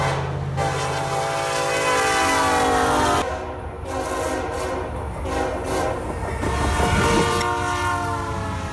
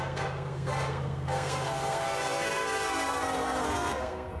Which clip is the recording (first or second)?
first